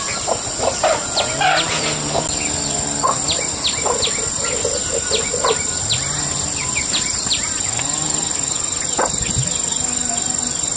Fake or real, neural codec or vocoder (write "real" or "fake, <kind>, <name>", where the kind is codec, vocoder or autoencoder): real